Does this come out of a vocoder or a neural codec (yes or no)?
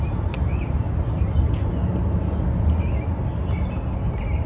no